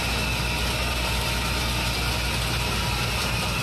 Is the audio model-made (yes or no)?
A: no